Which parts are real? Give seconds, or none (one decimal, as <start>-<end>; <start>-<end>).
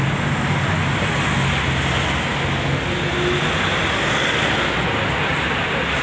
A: 0.0-6.0